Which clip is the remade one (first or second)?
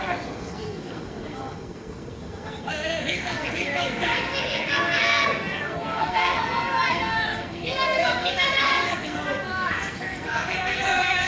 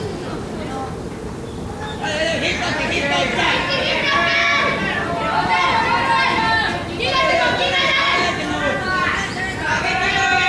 first